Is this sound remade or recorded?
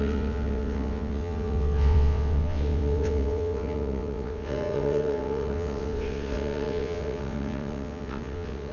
remade